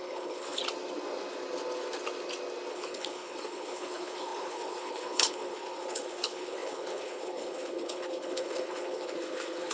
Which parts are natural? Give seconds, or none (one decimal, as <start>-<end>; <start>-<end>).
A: 0.6-2.7